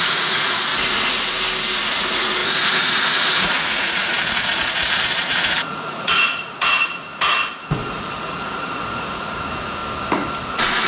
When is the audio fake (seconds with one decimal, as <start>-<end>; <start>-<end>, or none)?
0.0-0.7; 1.9-9.8; 10.4-10.9